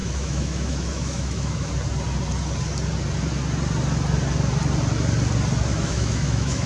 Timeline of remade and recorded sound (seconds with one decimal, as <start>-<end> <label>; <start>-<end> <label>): 0.0-1.7 remade; 1.7-5.7 recorded; 5.7-6.7 remade